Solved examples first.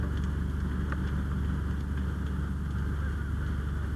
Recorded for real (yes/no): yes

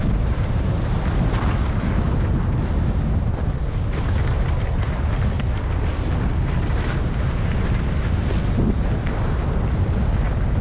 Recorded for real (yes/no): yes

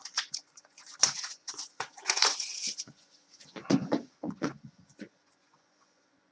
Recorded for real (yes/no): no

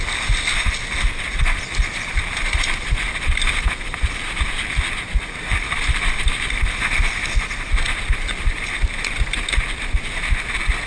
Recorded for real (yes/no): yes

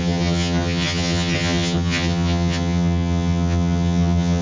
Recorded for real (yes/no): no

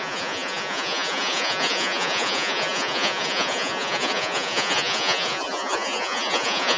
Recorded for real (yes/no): no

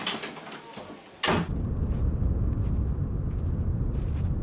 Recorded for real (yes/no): yes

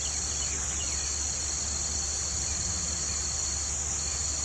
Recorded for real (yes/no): yes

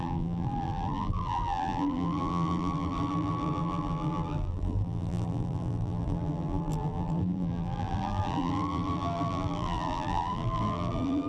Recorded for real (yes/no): no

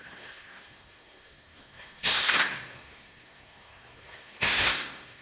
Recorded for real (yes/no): no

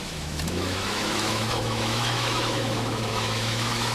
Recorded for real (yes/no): no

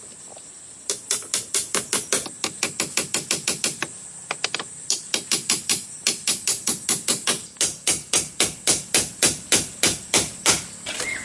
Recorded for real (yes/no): yes